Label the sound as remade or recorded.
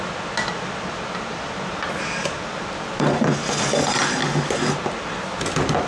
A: recorded